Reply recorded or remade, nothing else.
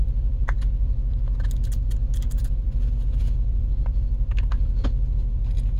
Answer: recorded